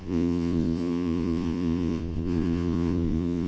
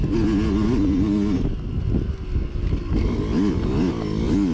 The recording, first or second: second